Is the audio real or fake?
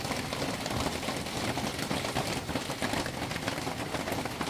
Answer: real